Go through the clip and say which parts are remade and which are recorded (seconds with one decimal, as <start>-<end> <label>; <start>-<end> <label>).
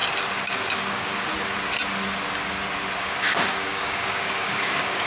0.0-0.9 recorded; 0.9-1.3 remade; 1.3-3.0 recorded; 3.0-5.1 remade